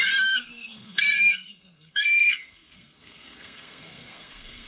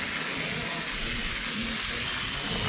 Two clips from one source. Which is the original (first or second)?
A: second